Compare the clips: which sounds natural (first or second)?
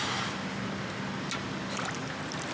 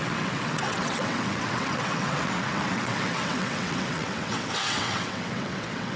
first